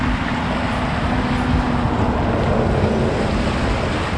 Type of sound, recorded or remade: recorded